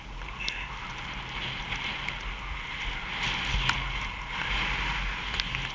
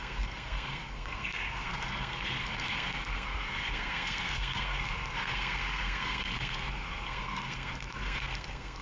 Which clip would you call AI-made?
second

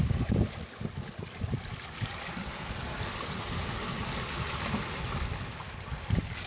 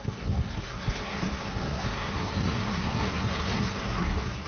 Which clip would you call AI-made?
second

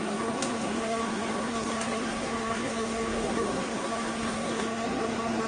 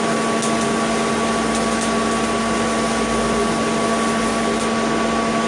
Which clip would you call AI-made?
first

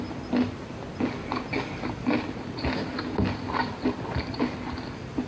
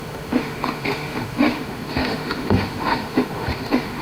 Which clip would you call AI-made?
second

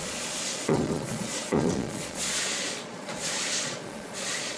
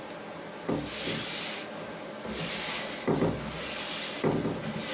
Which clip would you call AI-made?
first